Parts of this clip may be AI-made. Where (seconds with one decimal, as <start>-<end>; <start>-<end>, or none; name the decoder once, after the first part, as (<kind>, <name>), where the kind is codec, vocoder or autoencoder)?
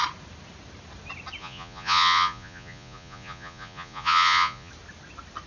1.4-4.7 (vocoder, Vocos)